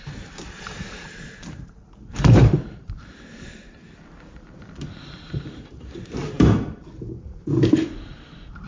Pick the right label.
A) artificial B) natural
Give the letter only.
A